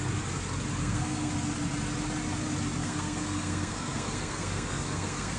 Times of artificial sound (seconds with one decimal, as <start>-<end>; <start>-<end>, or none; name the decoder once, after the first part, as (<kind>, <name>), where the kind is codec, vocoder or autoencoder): 0.8-1.3 (codec, SNAC); 2.8-5.4